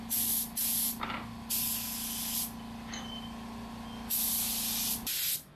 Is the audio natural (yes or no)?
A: yes